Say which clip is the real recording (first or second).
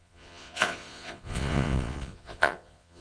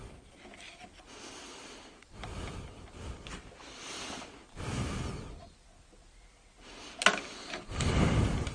second